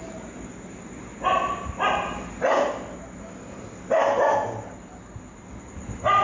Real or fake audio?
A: real